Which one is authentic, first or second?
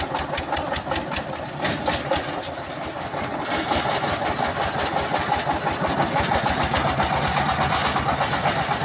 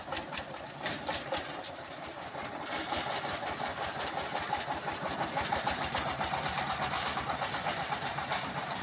first